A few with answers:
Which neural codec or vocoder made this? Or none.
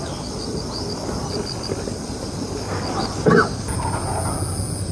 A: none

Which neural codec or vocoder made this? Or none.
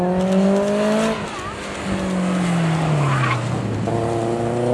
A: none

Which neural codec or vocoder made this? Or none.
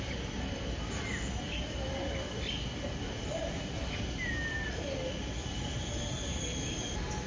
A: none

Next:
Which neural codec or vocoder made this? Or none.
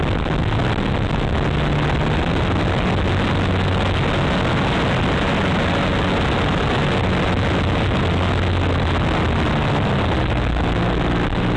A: none